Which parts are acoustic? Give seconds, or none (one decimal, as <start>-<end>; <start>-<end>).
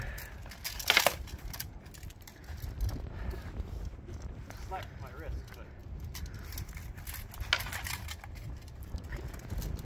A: 0.0-9.8